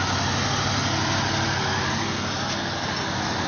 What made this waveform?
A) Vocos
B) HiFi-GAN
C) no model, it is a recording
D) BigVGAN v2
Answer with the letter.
C